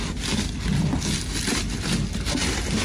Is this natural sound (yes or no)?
yes